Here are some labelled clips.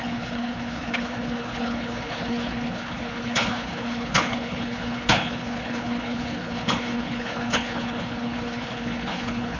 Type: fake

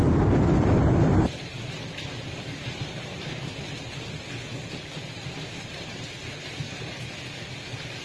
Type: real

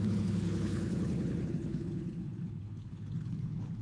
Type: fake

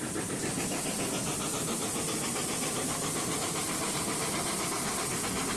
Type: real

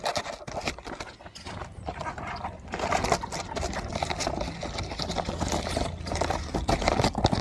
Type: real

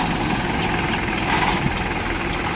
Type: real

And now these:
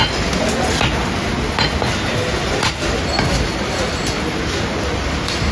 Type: real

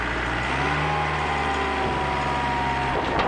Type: real